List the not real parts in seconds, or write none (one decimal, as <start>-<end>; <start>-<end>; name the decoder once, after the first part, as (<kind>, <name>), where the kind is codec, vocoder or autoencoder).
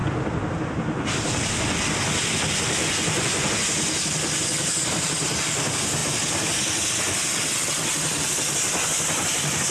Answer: 2.8-3.5 (vocoder, Vocos)